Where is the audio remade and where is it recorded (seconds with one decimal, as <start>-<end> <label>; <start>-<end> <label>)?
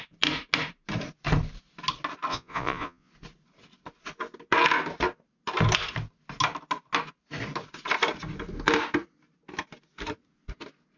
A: 0.0-2.3 recorded; 2.3-3.1 remade; 3.1-11.0 recorded